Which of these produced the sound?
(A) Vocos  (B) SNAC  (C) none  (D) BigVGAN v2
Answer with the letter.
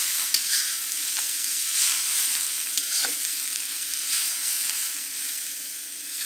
B